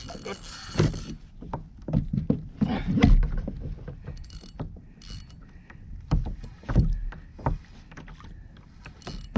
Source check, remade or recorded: recorded